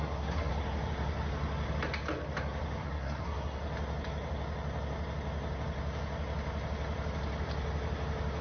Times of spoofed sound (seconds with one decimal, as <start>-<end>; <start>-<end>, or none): 0.0-0.5; 2.8-3.6